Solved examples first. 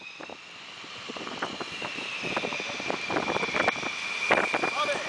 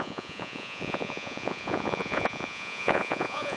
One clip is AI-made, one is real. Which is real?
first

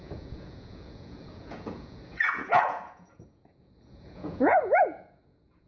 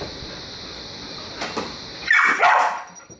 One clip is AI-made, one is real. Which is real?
second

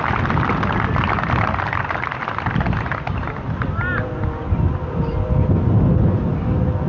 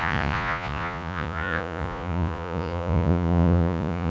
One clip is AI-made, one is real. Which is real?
first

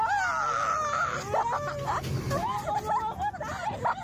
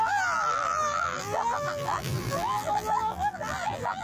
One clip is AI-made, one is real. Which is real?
first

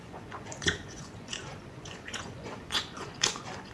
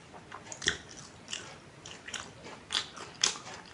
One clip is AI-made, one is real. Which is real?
second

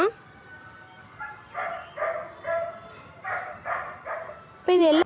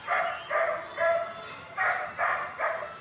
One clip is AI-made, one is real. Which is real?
second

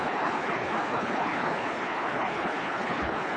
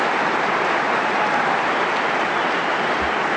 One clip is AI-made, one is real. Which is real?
second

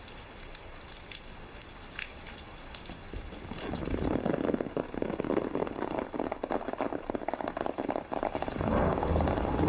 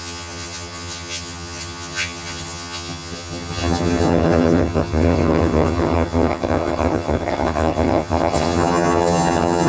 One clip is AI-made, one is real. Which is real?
first